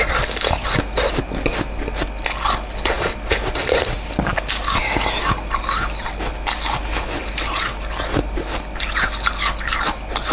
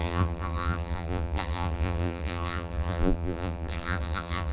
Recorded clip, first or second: first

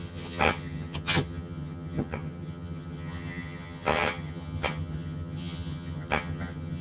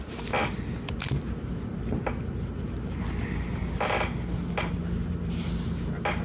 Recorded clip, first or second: second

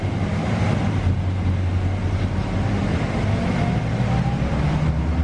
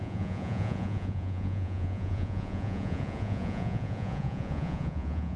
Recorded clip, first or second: first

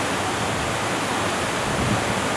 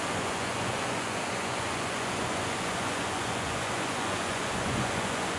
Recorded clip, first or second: first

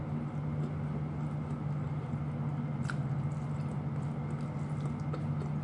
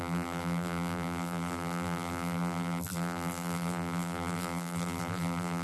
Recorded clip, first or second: first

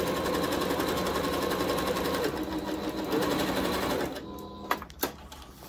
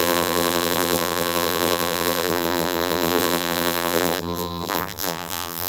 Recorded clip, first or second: first